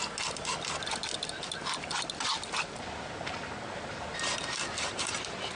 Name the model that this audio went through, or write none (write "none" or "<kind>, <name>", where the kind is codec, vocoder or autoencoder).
none